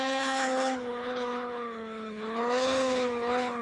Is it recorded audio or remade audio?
remade